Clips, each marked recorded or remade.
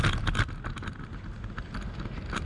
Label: recorded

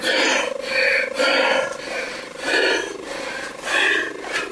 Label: recorded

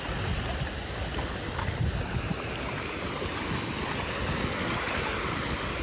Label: recorded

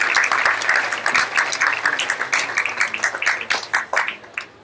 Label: recorded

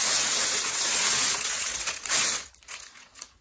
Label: remade